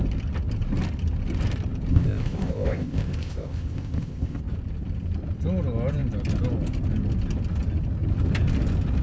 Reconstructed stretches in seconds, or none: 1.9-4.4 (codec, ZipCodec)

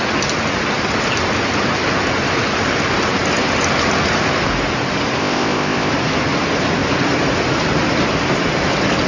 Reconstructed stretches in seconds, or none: 5.2-5.9 (codec, ZipCodec)

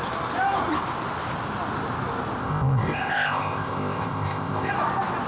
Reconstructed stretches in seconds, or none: 2.4-4.7 (codec, ZipCodec)